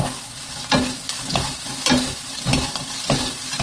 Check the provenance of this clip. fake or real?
real